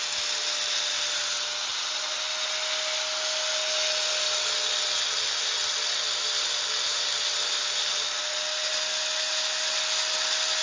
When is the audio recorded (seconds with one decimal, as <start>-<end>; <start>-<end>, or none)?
0.0-10.6